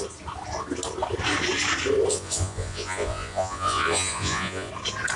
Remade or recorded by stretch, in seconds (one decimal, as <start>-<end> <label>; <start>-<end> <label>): 0.0-2.1 recorded; 2.1-4.7 remade; 4.7-5.2 recorded